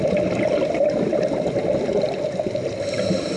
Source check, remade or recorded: recorded